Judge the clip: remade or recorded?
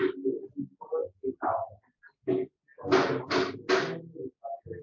recorded